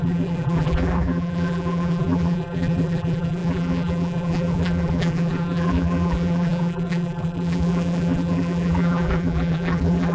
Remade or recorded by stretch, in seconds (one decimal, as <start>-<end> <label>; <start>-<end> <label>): 0.0-10.1 remade